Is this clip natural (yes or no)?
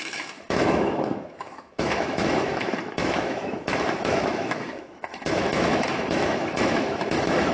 no